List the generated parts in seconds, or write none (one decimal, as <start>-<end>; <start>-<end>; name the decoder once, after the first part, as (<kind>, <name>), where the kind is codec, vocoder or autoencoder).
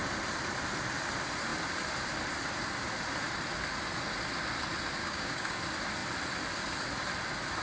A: 5.0-5.6 (codec, DAC)